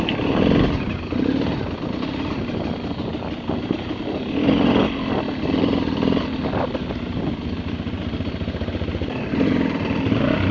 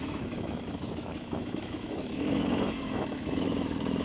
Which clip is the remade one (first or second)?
second